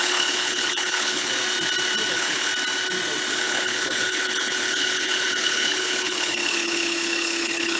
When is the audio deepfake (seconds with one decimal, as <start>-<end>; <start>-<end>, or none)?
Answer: 0.0-1.3; 2.1-2.5; 3.3-7.8